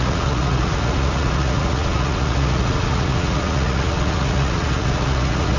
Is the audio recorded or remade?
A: remade